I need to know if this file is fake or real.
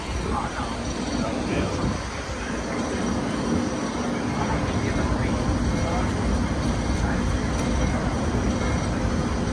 fake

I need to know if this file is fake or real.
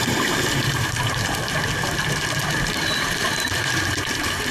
fake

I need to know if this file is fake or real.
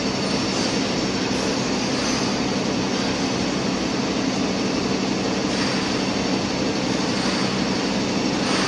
real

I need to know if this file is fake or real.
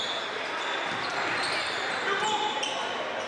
real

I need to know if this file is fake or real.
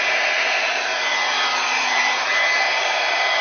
real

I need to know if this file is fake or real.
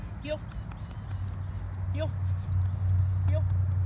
real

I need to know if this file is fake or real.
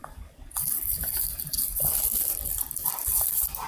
fake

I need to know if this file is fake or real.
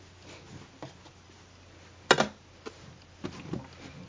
real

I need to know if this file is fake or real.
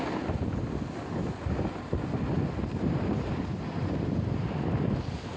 real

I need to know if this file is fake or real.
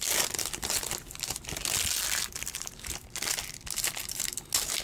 real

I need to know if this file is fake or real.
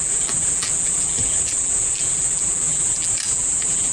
fake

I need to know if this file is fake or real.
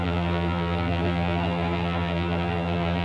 fake